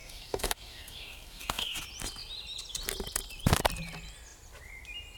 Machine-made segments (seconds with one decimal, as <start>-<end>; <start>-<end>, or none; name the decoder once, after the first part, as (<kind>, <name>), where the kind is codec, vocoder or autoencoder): 0.0-1.8 (codec, DAC)